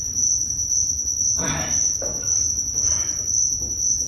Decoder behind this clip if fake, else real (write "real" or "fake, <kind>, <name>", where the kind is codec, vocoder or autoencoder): real